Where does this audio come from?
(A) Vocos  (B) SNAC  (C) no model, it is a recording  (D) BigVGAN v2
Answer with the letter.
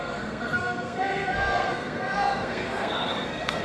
B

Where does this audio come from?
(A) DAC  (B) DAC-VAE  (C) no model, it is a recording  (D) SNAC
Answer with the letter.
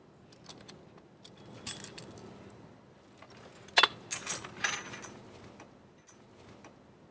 C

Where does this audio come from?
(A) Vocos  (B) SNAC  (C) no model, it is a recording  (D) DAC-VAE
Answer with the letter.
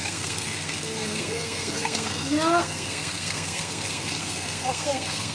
B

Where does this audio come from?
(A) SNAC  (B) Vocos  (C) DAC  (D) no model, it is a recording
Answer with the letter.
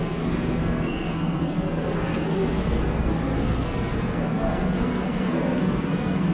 A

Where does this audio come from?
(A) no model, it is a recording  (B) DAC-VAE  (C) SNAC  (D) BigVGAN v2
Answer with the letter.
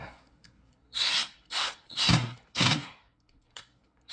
C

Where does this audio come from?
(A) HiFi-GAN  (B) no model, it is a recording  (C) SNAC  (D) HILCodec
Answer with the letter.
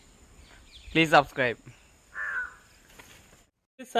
B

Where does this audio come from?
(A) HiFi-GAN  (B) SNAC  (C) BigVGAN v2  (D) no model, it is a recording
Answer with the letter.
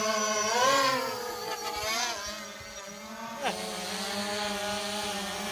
D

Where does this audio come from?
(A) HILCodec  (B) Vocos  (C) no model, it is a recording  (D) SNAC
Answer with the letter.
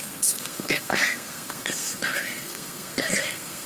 D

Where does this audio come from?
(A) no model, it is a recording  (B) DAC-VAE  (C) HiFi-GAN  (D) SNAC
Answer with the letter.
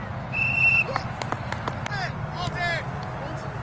A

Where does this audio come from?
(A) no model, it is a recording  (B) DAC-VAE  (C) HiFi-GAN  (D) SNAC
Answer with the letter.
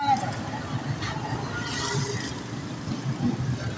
A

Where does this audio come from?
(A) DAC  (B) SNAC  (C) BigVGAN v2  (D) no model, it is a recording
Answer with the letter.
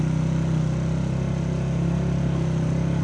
D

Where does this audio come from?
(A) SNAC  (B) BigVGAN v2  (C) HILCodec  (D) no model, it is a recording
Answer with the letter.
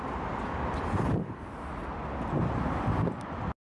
D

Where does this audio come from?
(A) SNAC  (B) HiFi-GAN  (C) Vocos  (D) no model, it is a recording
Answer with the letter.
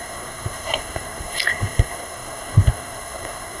A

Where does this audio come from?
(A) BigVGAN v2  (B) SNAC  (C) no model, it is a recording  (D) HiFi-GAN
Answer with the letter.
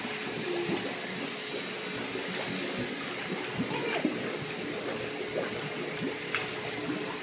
C